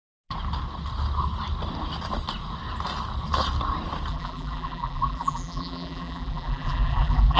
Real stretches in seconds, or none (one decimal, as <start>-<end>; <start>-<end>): 0.0-4.1